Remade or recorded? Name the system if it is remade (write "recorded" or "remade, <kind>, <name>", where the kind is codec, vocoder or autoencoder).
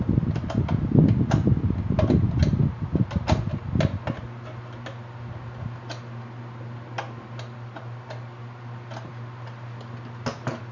recorded